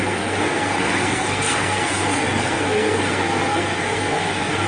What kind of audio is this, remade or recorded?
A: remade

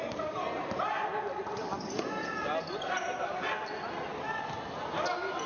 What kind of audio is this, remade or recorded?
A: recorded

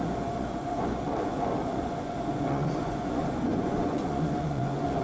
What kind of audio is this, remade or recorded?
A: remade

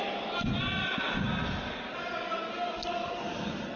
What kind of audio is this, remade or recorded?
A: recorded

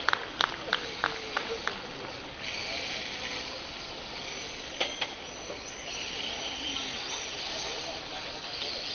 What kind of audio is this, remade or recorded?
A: recorded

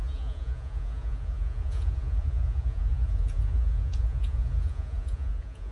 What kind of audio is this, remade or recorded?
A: remade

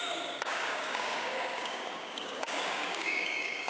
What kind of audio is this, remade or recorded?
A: remade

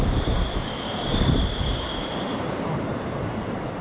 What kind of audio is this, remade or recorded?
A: remade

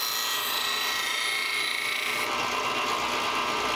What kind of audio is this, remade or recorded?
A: recorded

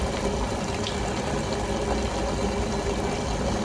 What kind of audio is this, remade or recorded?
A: recorded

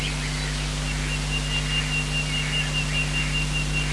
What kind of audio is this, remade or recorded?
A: recorded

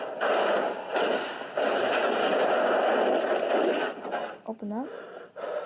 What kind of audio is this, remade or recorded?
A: recorded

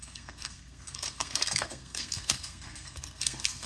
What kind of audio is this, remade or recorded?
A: remade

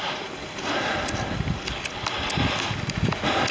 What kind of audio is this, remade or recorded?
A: recorded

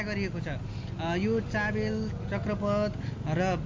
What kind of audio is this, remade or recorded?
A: recorded